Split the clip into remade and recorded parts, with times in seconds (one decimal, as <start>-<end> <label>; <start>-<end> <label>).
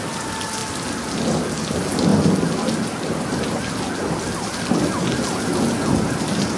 0.0-6.6 recorded